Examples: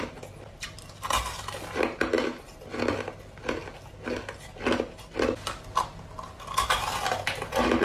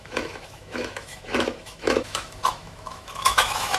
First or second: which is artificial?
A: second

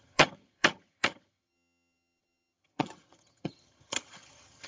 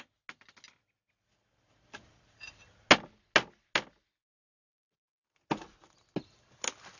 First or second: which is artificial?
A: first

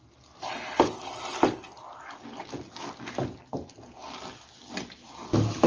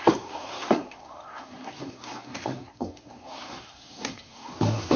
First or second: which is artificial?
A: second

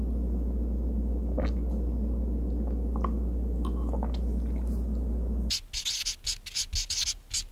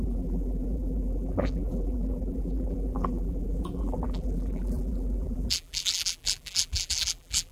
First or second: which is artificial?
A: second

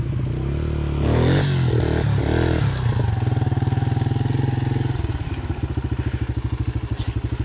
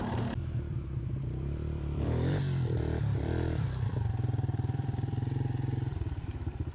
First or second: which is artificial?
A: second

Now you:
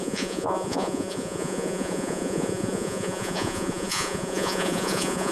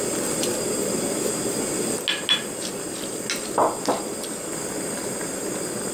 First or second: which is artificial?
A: first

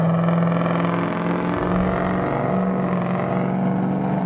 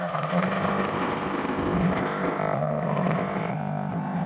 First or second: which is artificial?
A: second